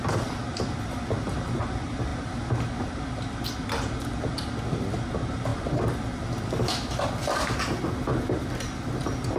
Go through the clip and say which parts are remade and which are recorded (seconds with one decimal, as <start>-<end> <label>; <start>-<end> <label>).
0.0-9.4 recorded